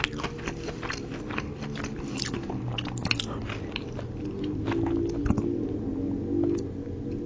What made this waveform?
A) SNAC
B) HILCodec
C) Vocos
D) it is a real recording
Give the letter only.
D